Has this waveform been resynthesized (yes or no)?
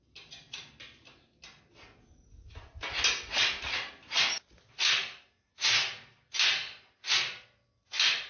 no